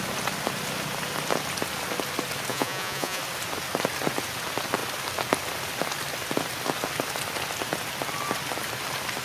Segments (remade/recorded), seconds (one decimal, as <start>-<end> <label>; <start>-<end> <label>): 0.0-2.5 recorded; 2.5-3.2 remade; 3.2-9.2 recorded